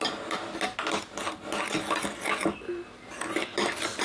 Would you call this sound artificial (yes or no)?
no